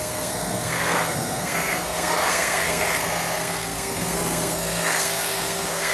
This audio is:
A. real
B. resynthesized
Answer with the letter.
B